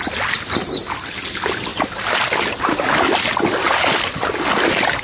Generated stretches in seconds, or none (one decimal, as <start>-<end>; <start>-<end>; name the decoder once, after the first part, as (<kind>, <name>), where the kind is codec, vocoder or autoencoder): none